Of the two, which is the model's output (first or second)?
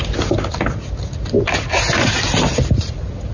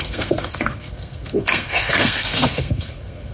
second